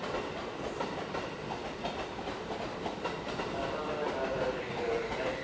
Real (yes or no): no